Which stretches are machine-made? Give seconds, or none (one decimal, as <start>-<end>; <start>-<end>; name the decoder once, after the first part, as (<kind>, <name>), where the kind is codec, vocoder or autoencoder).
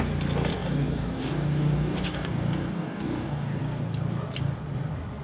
0.5-3.6 (codec, DAC)